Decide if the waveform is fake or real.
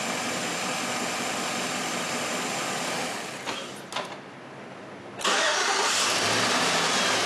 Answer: real